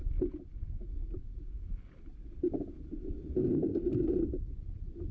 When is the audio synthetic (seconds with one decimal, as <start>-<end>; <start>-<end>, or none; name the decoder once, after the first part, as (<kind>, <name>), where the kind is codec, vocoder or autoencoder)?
none